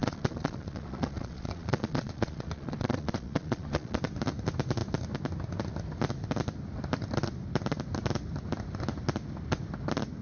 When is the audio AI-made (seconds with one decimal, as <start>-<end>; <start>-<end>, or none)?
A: 0.0-4.0